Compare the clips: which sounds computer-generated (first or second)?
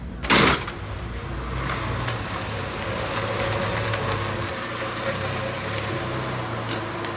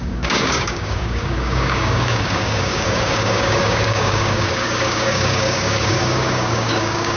second